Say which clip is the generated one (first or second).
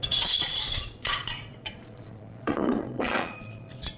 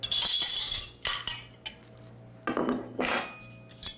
first